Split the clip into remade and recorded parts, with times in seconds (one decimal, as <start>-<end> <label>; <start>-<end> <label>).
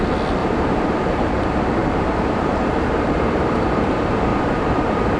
0.0-0.4 recorded; 0.4-1.4 remade; 1.4-1.8 recorded; 1.8-3.9 remade; 3.9-4.3 recorded; 4.3-5.2 remade